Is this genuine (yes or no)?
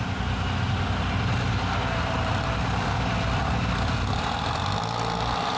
no